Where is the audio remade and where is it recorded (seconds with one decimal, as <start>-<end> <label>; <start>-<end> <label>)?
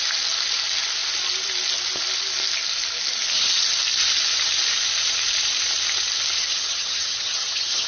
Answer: 0.0-6.5 recorded; 6.5-7.9 remade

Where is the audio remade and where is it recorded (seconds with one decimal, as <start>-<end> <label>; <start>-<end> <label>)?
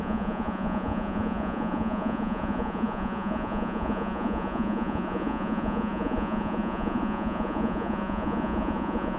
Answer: 0.0-9.2 remade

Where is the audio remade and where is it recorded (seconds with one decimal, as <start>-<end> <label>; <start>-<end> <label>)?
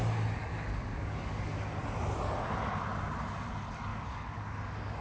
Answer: 0.0-0.4 recorded; 0.4-1.8 remade; 1.8-3.9 recorded; 3.9-5.0 remade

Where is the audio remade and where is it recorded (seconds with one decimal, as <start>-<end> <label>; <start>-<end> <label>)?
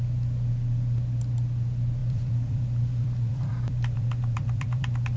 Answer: 0.0-2.0 recorded; 2.0-5.2 remade